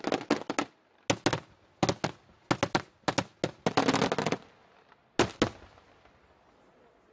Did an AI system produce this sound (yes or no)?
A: no